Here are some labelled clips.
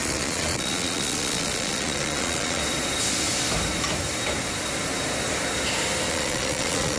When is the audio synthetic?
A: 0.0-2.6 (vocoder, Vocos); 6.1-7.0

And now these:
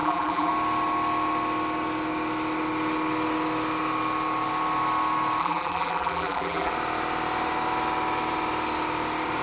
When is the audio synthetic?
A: 0.0-0.5 (vocoder, BigVGAN v2); 5.4-6.7

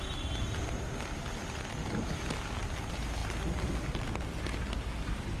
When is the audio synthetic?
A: none

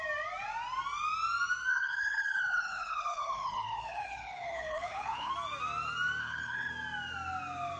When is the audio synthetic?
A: 1.7-5.3 (codec, HILCodec); 6.2-6.7

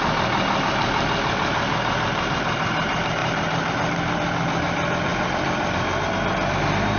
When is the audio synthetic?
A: none

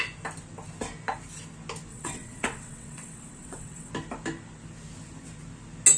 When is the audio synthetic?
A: 1.9-3.9 (vocoder, WaveNeXt)